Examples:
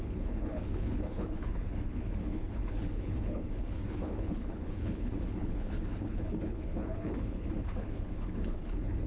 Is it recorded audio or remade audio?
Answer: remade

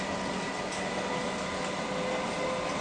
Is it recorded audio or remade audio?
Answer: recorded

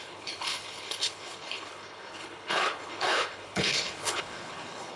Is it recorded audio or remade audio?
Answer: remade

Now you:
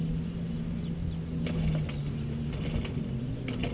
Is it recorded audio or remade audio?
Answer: recorded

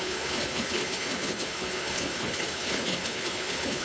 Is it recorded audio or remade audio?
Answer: remade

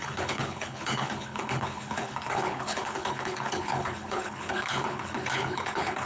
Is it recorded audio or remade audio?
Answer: remade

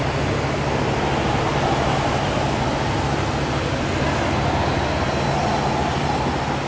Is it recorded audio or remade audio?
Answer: recorded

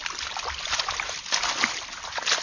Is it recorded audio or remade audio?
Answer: recorded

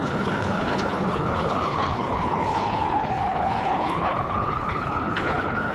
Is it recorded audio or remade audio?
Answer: remade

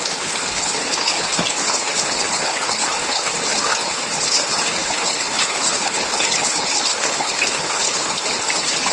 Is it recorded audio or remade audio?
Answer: remade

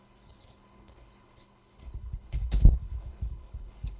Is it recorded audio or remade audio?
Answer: remade